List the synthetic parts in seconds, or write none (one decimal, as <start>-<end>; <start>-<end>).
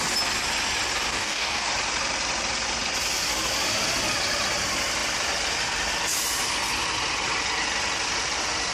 1.1-1.7